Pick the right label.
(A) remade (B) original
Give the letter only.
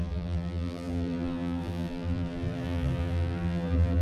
A